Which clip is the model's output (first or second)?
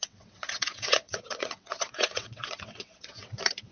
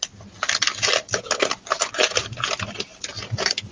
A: first